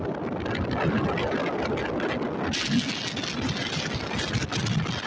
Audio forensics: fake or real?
real